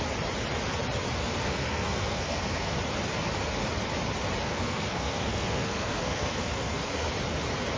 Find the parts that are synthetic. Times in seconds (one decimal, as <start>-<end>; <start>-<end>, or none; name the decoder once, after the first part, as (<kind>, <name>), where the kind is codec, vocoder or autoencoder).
1.2-2.8 (codec, SNAC); 4.4-7.1